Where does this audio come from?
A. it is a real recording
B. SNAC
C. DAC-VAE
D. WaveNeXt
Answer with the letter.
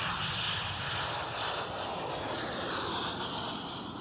A